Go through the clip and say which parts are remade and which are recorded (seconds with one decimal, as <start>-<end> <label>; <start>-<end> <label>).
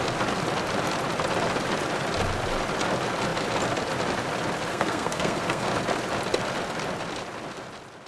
0.0-4.7 recorded; 4.7-5.7 remade; 5.7-8.1 recorded